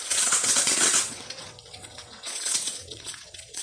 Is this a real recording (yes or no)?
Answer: no